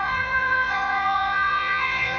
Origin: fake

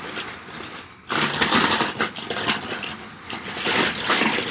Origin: fake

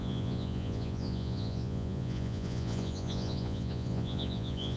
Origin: fake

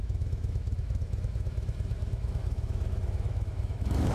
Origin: fake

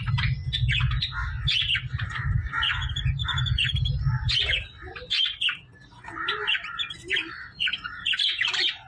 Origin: real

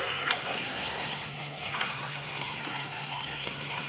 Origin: fake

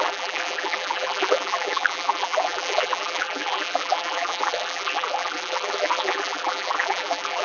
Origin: fake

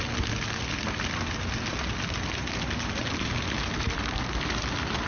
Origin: real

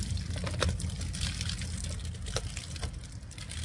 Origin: real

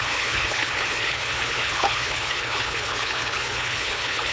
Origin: fake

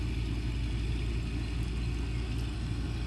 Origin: real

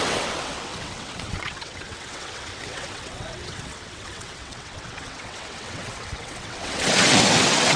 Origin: fake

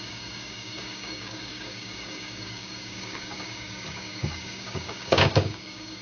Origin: fake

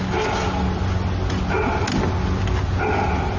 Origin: real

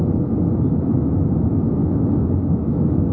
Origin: fake